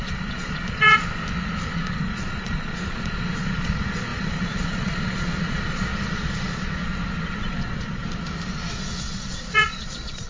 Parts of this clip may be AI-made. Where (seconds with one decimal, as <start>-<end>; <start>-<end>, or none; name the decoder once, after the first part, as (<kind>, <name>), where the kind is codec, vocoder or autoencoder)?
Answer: 0.0-1.0 (vocoder, Vocos); 1.7-6.8; 7.3-8.0; 8.7-10.3